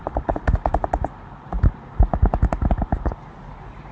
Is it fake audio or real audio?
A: real